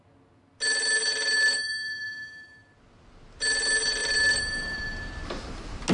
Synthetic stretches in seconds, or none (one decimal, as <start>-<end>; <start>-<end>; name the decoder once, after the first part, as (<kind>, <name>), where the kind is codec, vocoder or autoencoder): 4.0-4.8 (vocoder, BigVGAN v2)